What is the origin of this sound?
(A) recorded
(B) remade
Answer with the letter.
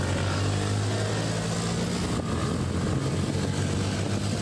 A